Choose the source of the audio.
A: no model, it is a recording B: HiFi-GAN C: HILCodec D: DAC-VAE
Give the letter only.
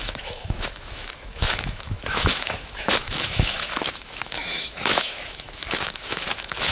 D